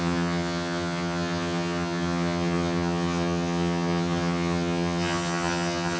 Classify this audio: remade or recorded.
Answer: remade